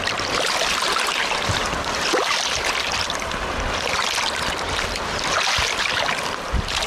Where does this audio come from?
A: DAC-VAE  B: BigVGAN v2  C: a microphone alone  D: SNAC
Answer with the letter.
C